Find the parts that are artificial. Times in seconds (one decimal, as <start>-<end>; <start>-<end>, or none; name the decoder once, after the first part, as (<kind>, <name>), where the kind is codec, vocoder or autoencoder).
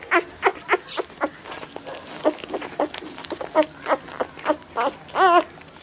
none